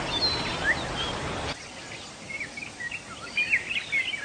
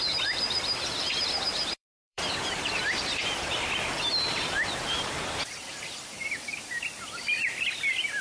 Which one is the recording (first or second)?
first